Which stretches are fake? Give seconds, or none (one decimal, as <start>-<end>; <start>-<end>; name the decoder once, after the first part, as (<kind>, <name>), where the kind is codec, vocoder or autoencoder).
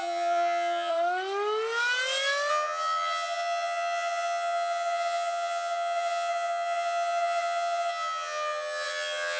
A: 0.0-0.9 (vocoder, HiFi-GAN); 2.5-9.4